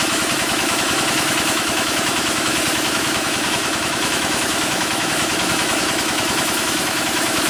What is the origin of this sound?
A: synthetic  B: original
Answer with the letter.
A